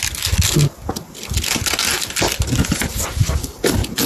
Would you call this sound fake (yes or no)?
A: no